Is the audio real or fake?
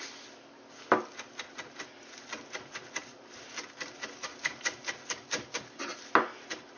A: real